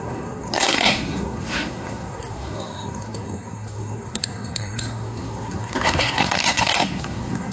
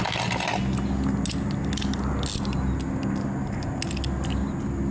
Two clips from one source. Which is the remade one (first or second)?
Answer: first